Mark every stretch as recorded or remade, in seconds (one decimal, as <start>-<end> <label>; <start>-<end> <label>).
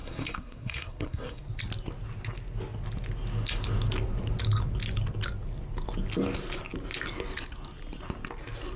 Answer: 0.0-1.4 remade; 1.4-8.8 recorded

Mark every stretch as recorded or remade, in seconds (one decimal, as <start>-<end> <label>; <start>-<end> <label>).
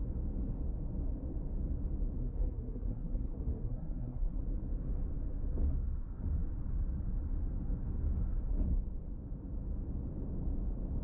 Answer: 0.0-2.2 recorded; 2.2-4.4 remade; 4.4-11.0 recorded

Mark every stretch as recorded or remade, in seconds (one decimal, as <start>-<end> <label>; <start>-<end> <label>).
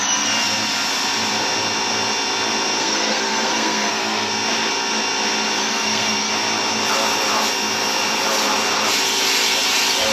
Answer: 0.0-2.8 recorded; 2.8-4.3 remade; 4.3-5.6 recorded; 5.6-6.3 remade; 6.3-10.1 recorded